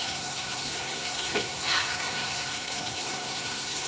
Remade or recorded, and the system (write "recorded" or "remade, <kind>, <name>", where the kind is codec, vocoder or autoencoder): remade, codec, SNAC